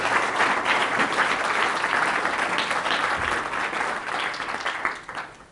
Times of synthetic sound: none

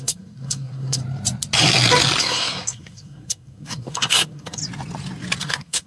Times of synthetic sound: 0.0-1.0 (codec, SNAC); 2.2-4.6; 5.4-5.9